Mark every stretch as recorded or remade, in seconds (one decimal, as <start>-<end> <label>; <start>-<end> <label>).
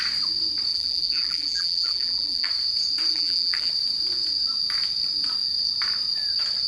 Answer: 0.0-0.7 recorded; 0.7-2.5 remade; 2.5-3.1 recorded; 3.1-3.7 remade; 3.7-6.7 recorded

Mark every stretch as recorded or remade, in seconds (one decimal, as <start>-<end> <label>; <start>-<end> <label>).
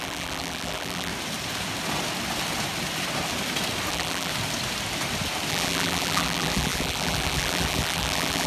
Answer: 0.0-1.1 remade; 1.1-3.9 recorded; 3.9-4.3 remade; 4.3-5.5 recorded; 5.5-8.5 remade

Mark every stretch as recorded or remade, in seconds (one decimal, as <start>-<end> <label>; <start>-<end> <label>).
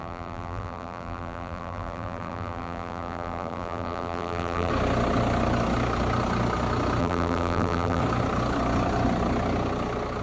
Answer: 0.0-4.7 remade; 4.7-7.0 recorded; 7.0-8.0 remade; 8.0-10.2 recorded